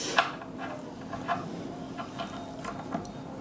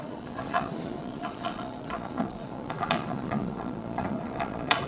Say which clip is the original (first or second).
first